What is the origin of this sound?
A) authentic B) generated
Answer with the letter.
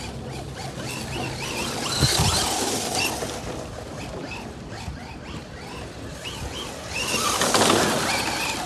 A